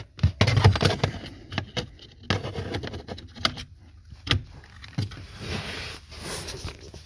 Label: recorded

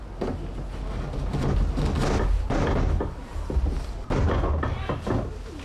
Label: recorded